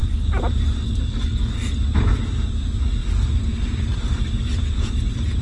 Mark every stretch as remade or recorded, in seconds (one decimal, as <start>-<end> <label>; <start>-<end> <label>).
0.0-1.1 recorded; 1.1-1.7 remade; 1.7-5.4 recorded